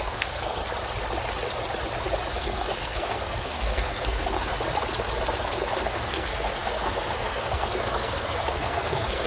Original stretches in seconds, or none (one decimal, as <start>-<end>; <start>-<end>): 0.6-2.3; 4.5-5.4